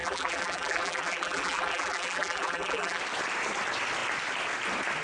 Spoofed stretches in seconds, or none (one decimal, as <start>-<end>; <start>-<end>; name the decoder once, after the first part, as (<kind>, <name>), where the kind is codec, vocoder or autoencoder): 0.0-3.0 (vocoder, BigVGAN v2)